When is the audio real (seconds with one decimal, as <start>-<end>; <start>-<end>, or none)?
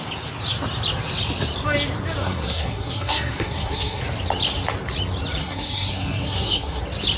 0.0-2.2; 4.0-5.4; 6.8-7.2